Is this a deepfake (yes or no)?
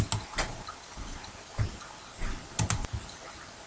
no